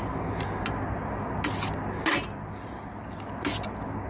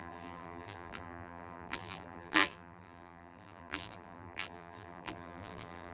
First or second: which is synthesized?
second